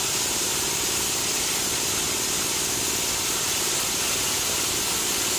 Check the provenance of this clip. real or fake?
real